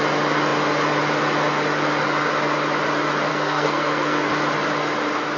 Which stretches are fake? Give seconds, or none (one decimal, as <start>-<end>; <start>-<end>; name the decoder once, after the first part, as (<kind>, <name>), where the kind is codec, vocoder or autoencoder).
3.3-4.3 (codec, SNAC)